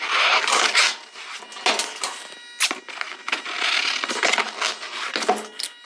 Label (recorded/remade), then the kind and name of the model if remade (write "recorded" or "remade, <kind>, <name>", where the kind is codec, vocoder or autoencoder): recorded